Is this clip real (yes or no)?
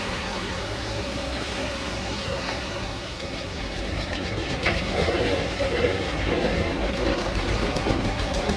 no